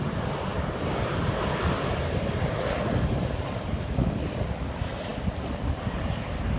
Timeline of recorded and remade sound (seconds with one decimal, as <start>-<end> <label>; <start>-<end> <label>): 0.0-6.6 recorded